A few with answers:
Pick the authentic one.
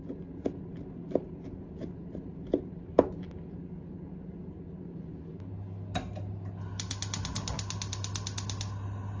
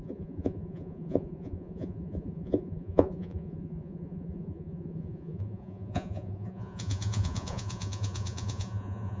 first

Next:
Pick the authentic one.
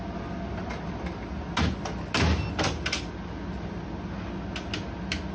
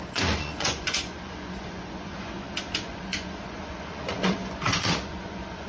first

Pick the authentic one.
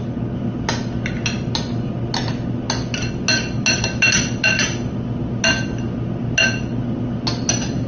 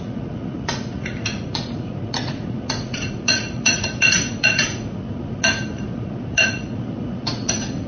first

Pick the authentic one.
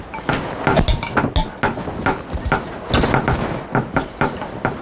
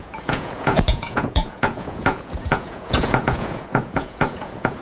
first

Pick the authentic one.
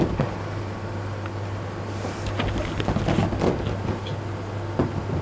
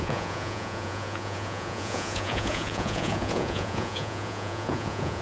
first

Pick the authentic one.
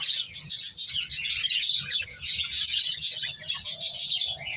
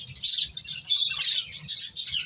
second